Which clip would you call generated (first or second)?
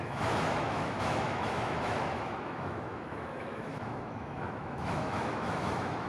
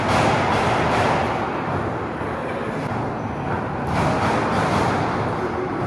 first